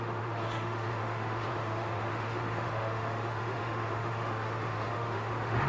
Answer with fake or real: fake